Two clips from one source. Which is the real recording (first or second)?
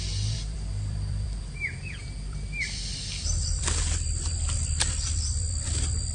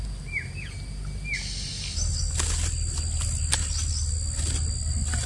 second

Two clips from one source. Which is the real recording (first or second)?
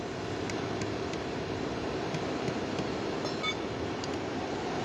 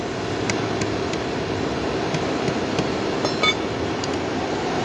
second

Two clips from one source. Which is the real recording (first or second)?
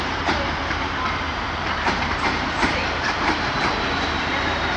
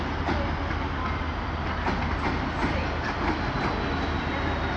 second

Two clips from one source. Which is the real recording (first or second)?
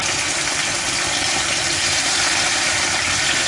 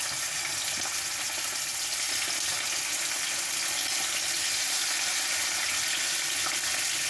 second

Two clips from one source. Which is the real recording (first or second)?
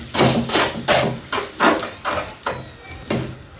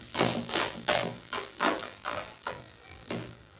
first